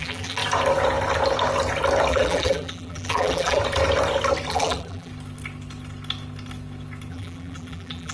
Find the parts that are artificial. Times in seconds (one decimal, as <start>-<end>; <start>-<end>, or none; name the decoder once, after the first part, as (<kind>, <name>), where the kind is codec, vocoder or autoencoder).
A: 0.0-0.4 (vocoder, BigVGAN v2); 2.1-3.6; 4.5-5.1; 7.1-8.1